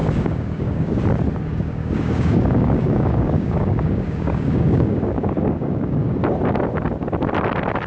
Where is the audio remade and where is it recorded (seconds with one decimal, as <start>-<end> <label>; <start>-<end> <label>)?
0.0-1.0 remade; 1.0-1.5 recorded; 1.5-6.2 remade; 6.2-7.9 recorded